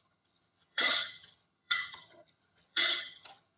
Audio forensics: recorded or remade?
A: remade